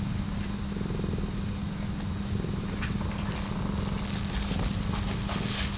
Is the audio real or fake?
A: real